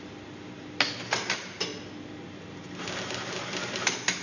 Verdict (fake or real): real